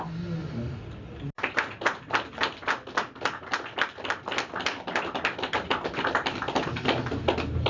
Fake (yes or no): no